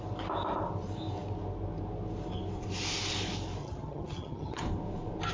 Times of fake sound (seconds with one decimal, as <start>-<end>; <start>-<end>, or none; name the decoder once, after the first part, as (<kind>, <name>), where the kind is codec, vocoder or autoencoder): 3.6-4.6 (vocoder, HiFi-GAN)